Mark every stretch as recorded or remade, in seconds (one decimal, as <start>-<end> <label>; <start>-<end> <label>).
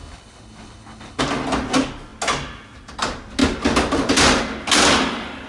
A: 0.0-1.2 remade; 1.2-5.5 recorded